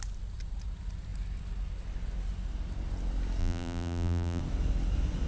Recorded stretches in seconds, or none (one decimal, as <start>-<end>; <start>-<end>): 0.0-3.4; 4.4-5.3